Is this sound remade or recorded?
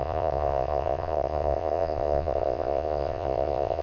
remade